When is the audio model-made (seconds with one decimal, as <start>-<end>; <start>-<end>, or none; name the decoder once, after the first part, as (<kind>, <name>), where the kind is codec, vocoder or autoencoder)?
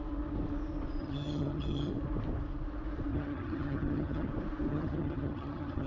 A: 1.0-1.9 (vocoder, HiFi-GAN); 3.1-4.3; 4.7-5.9